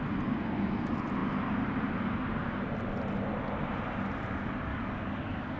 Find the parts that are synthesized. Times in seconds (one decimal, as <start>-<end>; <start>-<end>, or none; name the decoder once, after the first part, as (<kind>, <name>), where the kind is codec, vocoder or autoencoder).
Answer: 4.7-5.6 (codec, DAC)